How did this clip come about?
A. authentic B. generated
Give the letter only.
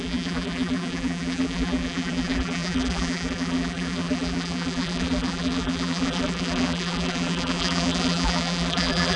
B